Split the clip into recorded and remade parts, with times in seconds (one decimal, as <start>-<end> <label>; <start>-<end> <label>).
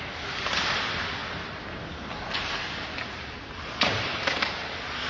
0.0-5.1 recorded